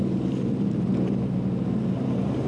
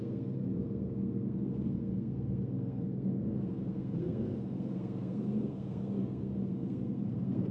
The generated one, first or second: second